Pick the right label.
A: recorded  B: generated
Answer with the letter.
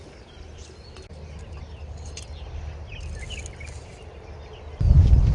A